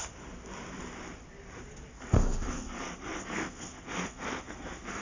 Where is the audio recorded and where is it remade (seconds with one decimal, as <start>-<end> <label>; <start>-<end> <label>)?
0.0-1.9 recorded; 1.9-5.0 remade